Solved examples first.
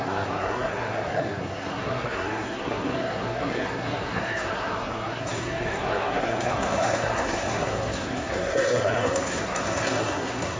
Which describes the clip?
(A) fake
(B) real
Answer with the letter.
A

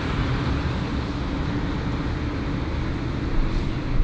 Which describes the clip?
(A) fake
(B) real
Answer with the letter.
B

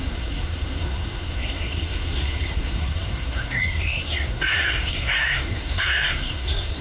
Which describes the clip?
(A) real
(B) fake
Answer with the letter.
B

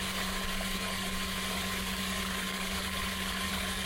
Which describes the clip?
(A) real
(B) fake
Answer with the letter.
B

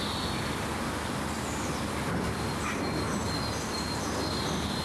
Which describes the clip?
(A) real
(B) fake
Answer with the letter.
A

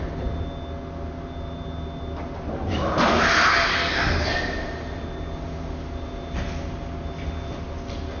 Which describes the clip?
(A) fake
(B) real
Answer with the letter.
B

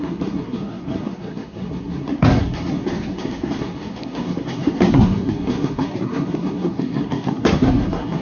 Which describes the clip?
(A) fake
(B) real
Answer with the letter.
A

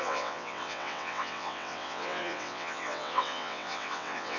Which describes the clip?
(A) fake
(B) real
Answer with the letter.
A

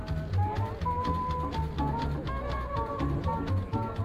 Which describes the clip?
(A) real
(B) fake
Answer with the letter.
A